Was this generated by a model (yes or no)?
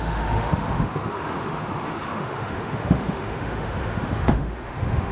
yes